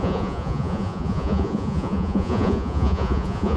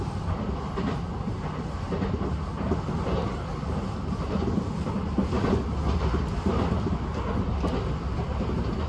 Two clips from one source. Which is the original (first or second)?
second